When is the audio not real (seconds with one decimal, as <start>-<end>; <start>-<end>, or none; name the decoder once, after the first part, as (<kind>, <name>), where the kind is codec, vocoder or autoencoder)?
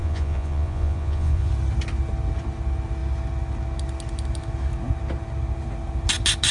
0.0-1.5 (vocoder, Vocos)